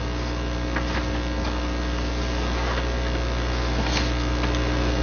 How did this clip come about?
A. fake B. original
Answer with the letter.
B